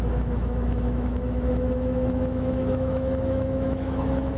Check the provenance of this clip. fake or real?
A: fake